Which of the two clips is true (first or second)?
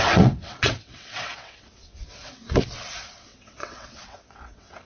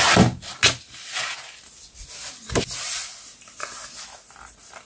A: second